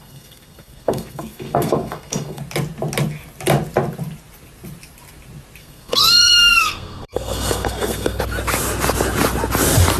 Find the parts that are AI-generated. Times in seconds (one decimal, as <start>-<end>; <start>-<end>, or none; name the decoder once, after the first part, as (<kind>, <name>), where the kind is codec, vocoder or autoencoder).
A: 0.0-2.4 (codec, SNAC); 5.6-8.2